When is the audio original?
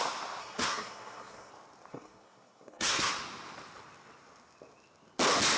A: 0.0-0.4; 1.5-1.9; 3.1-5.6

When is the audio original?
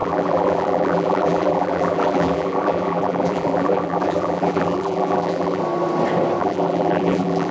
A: 5.6-6.4